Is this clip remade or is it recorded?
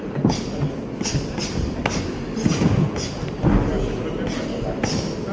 recorded